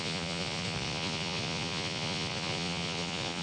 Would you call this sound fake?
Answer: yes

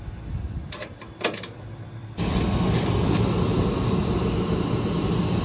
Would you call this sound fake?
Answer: no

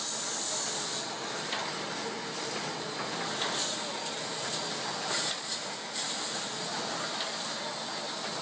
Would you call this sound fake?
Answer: no